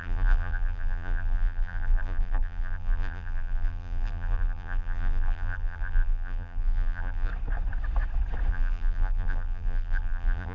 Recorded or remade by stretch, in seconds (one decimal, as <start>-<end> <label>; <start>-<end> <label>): 0.0-7.3 remade; 7.3-8.5 recorded; 8.5-10.5 remade